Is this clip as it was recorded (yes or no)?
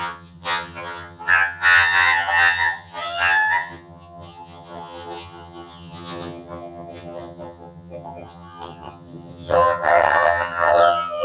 no